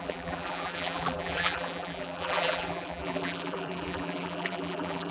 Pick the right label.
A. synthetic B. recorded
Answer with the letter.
A